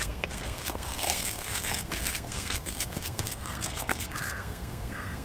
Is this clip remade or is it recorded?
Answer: remade